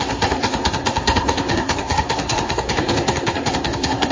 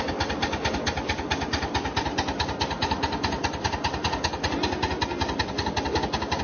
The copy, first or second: first